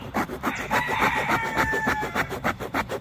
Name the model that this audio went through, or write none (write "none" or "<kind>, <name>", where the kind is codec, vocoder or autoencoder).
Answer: vocoder, BigVGAN v2